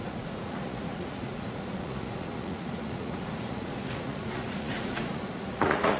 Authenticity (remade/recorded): remade